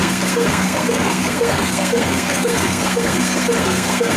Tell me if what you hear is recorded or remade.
remade